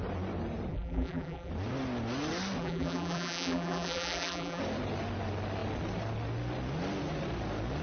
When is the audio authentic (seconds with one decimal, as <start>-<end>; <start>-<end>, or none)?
0.0-0.7; 1.5-2.6; 4.6-7.8